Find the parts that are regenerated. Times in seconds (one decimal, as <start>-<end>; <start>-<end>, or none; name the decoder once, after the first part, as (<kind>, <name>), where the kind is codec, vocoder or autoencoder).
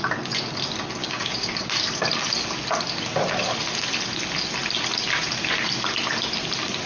1.0-1.5 (codec, DAC)